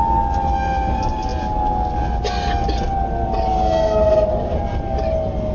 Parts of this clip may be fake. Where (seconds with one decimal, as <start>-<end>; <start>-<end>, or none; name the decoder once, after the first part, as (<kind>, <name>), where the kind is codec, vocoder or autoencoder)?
none